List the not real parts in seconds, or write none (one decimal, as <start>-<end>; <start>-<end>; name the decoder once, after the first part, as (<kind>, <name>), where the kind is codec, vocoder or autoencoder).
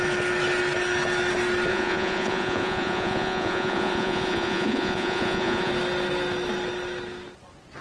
1.7-5.7 (vocoder, Vocos)